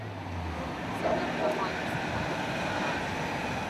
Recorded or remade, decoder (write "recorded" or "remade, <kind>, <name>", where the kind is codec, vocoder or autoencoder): recorded